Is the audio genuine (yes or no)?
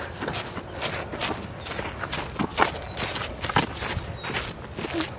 yes